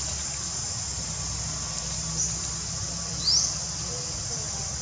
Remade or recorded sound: recorded